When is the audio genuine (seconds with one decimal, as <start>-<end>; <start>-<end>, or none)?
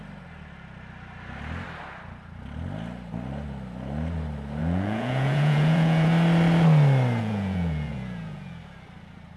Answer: 0.0-4.6; 6.1-7.2; 8.6-9.4